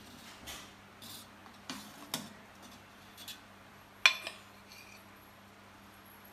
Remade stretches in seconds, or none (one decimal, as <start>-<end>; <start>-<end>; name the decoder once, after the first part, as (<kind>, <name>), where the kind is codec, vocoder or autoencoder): none